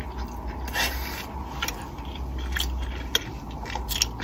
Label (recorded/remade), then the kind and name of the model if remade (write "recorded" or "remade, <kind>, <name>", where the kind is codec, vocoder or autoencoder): recorded